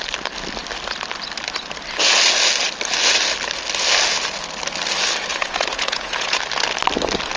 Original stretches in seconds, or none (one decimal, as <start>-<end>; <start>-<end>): 0.0-5.3; 6.4-7.4